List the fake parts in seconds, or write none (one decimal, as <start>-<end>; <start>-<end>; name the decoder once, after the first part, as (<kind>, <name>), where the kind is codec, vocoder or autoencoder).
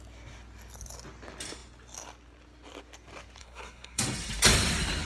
3.4-4.0 (codec, SNAC)